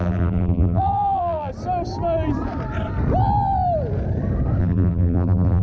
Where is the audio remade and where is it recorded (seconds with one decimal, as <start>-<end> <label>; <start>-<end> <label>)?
0.0-1.5 remade; 1.5-4.6 recorded; 4.6-5.6 remade